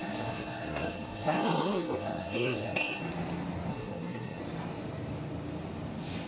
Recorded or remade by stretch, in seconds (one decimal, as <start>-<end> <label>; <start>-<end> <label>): 0.0-3.0 remade; 3.0-3.7 recorded; 3.7-4.4 remade; 4.4-6.3 recorded